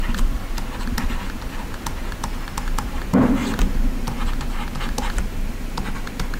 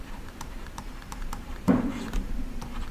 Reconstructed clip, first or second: second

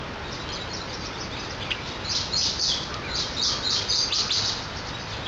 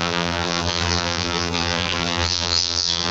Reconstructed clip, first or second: second